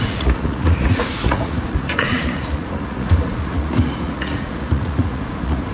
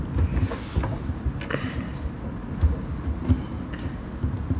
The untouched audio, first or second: second